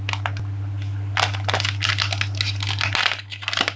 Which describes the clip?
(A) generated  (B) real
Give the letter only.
B